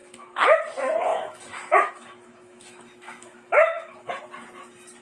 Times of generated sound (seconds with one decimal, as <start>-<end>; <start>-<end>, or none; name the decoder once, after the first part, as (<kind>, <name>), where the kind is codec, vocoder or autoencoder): 0.0-0.6 (autoencoder, DAC-VAE); 1.1-4.1